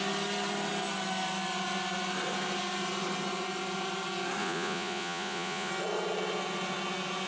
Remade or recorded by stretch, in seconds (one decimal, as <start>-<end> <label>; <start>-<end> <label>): 0.0-4.4 recorded; 4.4-5.7 remade; 5.7-7.3 recorded